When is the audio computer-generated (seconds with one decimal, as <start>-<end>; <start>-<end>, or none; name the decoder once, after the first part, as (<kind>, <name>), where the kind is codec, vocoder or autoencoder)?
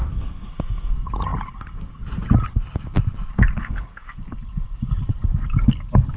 0.0-0.9 (codec, SNAC); 3.6-4.2